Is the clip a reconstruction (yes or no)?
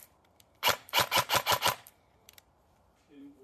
yes